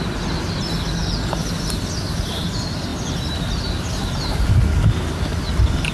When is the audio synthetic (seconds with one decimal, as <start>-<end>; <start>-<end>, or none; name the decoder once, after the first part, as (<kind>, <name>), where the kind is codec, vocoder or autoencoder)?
none